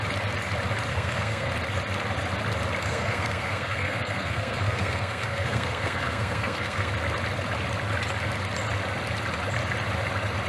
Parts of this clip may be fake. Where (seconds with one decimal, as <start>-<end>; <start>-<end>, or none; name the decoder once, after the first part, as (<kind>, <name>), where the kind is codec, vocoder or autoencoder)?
0.9-1.5 (codec, SNAC); 2.8-6.9